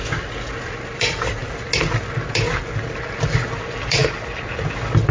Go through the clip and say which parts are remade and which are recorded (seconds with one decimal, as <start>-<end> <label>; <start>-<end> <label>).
0.0-1.4 remade; 1.4-3.6 recorded; 3.6-4.0 remade; 4.0-5.1 recorded